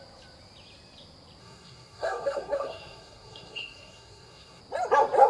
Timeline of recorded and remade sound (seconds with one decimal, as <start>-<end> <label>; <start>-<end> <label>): 0.0-1.4 recorded; 1.4-4.6 remade; 4.6-5.3 recorded